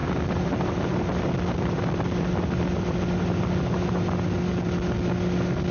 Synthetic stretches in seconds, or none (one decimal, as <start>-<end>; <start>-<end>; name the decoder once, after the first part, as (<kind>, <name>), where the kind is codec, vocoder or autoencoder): none